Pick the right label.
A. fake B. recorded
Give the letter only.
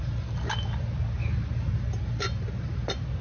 B